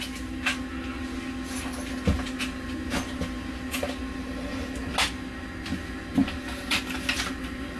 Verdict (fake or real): real